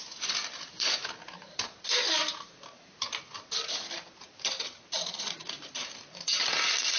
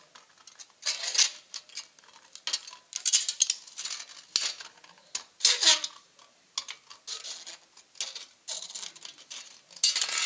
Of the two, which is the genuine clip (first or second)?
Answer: second